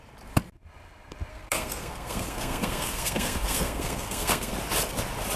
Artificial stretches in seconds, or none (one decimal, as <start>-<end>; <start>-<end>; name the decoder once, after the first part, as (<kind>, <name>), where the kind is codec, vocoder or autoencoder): 1.3-4.5 (codec, SNAC)